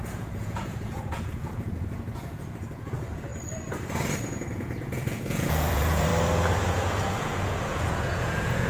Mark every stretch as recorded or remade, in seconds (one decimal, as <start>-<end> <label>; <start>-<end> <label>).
0.0-3.3 remade; 3.3-4.2 recorded; 4.2-6.1 remade; 6.1-6.6 recorded; 6.6-8.7 remade